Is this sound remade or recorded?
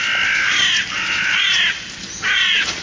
recorded